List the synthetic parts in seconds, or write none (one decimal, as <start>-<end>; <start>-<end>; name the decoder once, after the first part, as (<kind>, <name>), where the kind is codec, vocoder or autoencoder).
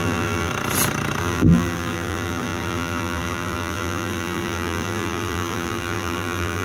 0.0-0.5 (vocoder, BigVGAN v2); 1.2-6.6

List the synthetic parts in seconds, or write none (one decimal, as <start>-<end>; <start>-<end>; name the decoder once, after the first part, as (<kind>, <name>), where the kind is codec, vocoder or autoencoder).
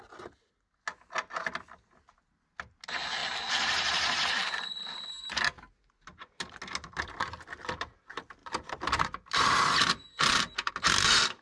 3.2-4.4 (vocoder, BigVGAN v2); 8.4-10.7